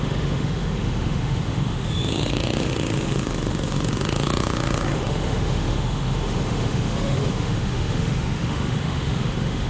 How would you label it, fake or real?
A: fake